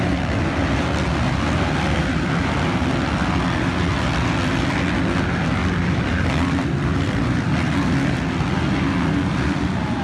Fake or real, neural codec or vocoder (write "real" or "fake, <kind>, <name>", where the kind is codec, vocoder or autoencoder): real